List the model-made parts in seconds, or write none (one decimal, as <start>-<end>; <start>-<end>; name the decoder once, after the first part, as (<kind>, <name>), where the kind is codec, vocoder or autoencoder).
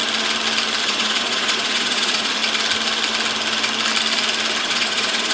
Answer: 0.8-2.4 (vocoder, Vocos); 4.6-5.3